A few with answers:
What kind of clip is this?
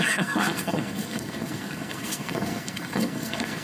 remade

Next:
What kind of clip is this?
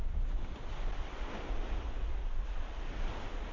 recorded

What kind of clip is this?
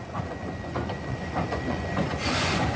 remade